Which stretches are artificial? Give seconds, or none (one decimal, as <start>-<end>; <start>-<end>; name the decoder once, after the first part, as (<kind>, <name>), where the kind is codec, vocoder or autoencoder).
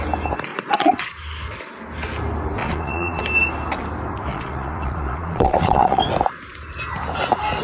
0.5-1.1 (vocoder, Vocos); 2.6-3.2; 4.3-6.0